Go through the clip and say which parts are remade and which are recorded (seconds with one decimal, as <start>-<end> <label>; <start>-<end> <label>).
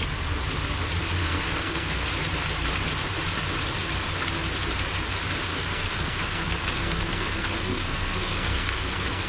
0.0-1.2 recorded; 1.2-2.1 remade; 2.1-5.5 recorded; 5.5-9.3 remade